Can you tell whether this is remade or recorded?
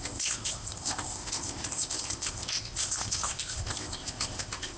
remade